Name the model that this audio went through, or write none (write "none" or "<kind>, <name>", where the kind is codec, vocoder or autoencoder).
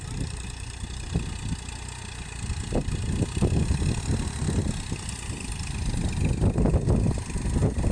none